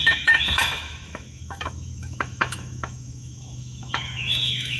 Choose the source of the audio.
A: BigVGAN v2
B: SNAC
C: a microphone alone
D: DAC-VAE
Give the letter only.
D